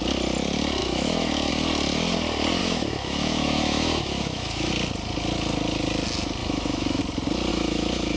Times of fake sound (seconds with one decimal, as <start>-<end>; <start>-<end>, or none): 0.8-1.5; 2.6-4.7; 6.4-7.0; 7.5-8.2